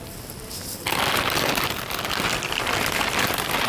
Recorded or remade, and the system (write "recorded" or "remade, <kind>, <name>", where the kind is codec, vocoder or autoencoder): recorded